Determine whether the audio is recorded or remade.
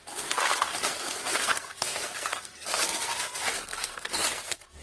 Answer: remade